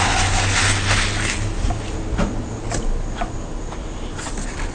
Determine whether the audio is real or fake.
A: real